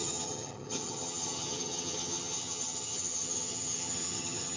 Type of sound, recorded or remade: remade